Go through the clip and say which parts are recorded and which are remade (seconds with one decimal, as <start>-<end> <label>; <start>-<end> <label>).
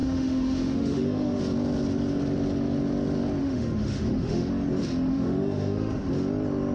0.0-1.4 remade; 1.4-3.4 recorded; 3.4-4.5 remade; 4.5-5.1 recorded; 5.1-6.1 remade; 6.1-6.7 recorded